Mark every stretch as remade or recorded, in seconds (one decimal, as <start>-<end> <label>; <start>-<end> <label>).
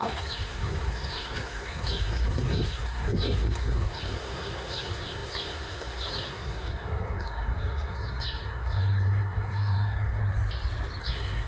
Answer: 0.0-10.2 remade; 10.2-11.0 recorded; 11.0-11.5 remade